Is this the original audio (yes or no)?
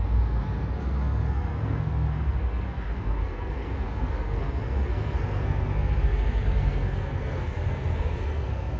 no